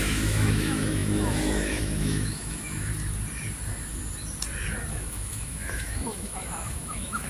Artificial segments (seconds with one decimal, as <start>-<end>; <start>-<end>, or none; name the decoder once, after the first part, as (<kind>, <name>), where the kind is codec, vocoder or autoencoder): 0.0-2.9 (autoencoder, DAC-VAE); 4.9-7.3